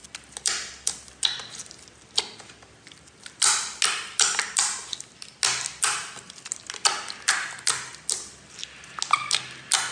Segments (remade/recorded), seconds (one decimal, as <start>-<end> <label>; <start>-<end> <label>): 0.0-9.9 recorded